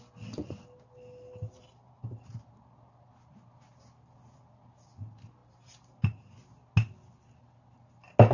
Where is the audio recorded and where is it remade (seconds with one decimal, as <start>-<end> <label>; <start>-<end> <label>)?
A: 0.0-1.6 recorded; 1.6-2.4 remade; 2.4-5.4 recorded; 5.4-6.3 remade; 6.3-8.3 recorded